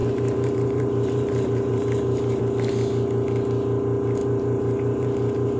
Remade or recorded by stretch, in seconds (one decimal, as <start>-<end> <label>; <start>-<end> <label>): 0.0-2.4 remade; 2.4-4.2 recorded; 4.2-5.6 remade